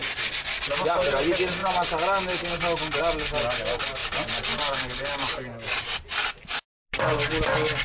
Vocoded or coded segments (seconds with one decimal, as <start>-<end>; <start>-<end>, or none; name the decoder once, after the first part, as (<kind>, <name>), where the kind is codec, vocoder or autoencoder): none